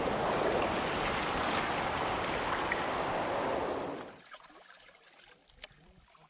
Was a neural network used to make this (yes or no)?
no